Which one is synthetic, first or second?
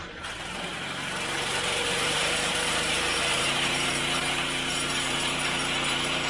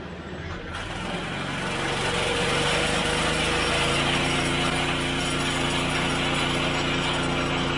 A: first